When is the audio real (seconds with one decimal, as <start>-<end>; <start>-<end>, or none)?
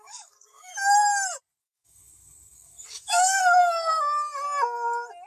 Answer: 0.7-1.6; 3.4-5.3